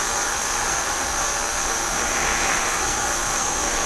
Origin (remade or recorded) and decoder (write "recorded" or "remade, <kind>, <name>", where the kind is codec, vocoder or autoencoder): remade, codec, SNAC